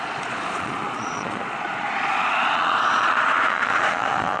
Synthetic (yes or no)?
yes